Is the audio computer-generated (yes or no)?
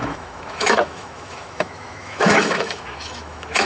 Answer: yes